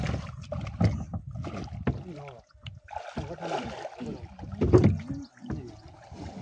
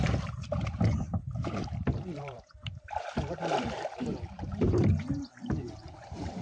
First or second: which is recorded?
first